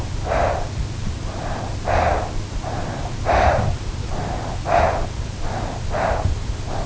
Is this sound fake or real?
real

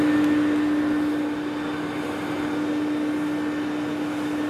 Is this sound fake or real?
real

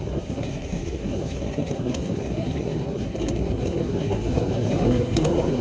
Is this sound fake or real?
fake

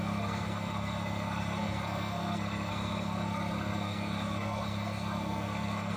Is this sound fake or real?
fake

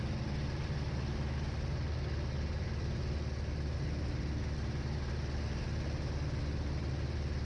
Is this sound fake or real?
real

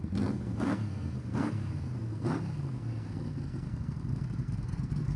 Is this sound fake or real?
fake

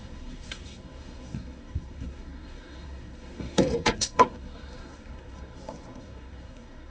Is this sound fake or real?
fake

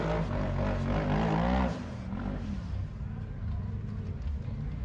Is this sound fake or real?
real